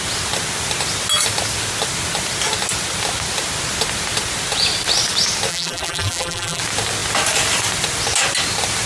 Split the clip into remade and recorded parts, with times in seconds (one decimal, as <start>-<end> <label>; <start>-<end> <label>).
0.0-5.5 recorded; 5.5-6.6 remade; 6.6-8.9 recorded